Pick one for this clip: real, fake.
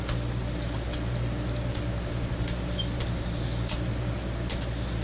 real